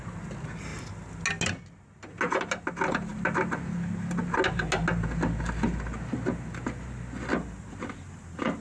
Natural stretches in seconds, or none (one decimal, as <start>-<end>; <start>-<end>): 0.0-8.6